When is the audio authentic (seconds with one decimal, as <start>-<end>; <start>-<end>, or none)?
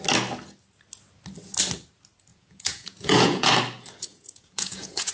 0.0-2.3; 3.5-4.1